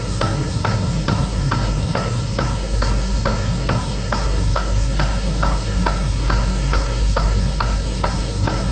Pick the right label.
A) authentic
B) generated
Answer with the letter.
B